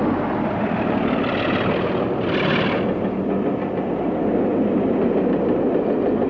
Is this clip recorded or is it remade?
recorded